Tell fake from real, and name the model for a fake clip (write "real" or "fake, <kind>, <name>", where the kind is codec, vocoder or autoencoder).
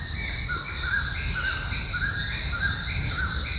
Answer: real